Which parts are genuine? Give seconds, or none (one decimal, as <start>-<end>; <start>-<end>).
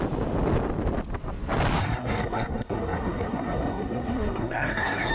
0.0-1.8